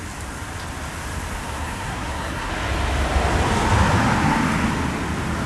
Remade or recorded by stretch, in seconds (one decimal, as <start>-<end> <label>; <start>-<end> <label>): 0.0-1.4 recorded; 1.4-2.5 remade; 2.5-5.5 recorded